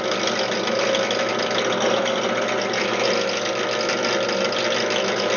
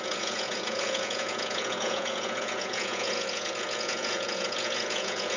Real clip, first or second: first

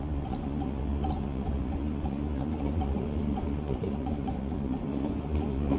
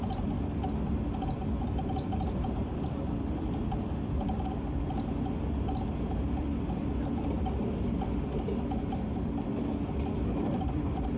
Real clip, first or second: second